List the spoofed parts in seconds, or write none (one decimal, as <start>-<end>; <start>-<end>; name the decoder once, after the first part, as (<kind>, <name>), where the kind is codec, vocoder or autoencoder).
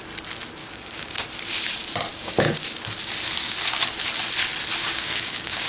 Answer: 0.6-1.2 (codec, DAC); 2.1-2.8; 4.8-5.7